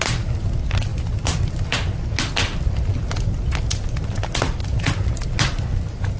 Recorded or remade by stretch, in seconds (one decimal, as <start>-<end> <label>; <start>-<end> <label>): 0.0-6.2 recorded